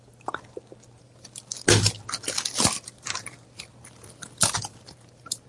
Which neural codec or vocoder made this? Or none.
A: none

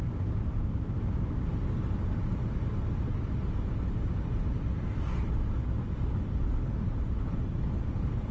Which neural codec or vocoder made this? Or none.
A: none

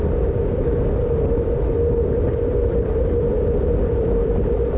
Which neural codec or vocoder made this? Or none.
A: vocoder, BigVGAN v2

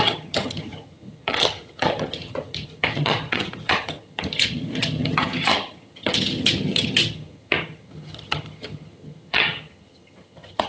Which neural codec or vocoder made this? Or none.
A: vocoder, HiFi-GAN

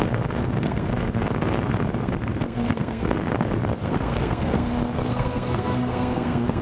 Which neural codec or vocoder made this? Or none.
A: codec, SNAC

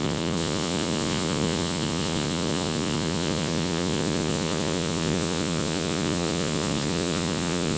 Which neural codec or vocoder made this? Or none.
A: vocoder, Vocos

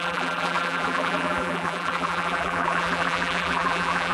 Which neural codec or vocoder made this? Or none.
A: vocoder, BigVGAN v2